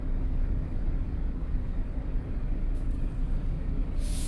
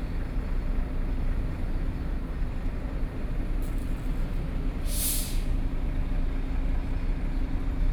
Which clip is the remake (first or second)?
first